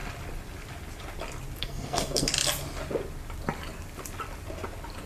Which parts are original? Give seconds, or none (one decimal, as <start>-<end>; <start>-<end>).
0.0-1.6; 2.3-5.1